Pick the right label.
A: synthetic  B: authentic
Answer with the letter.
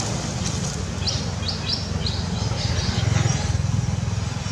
B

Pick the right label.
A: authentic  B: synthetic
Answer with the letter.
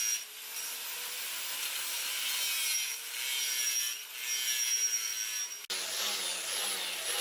A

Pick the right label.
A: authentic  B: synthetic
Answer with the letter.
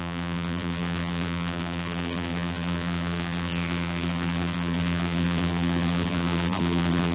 B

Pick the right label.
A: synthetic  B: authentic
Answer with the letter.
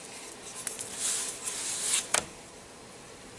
B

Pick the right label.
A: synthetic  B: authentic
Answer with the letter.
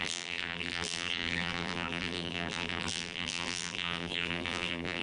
A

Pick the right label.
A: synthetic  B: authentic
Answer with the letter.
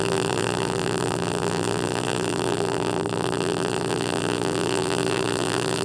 A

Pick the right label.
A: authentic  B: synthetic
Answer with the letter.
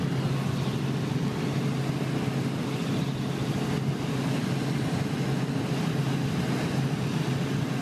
A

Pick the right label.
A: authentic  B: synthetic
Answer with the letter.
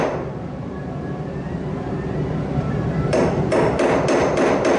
B